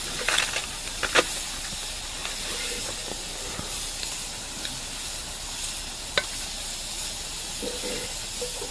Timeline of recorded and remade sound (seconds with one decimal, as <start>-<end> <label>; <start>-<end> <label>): 0.0-0.6 recorded; 0.6-2.1 remade; 2.1-8.7 recorded